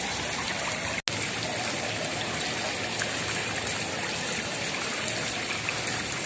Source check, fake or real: real